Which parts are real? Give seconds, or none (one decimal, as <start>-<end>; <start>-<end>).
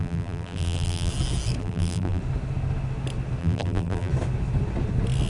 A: 1.1-1.6; 2.2-3.4; 4.1-5.3